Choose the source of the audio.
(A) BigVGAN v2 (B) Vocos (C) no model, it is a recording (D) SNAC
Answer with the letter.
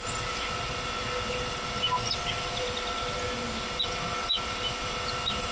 C